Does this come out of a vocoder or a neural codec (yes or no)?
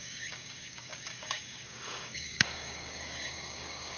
yes